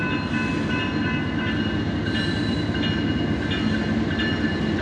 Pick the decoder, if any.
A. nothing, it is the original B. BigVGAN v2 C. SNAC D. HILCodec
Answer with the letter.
A